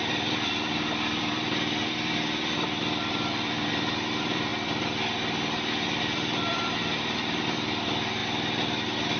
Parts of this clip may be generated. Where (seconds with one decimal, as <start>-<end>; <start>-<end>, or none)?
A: 0.0-4.5; 6.0-8.2